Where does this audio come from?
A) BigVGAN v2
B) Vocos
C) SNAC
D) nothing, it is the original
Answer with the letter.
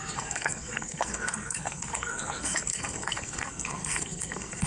C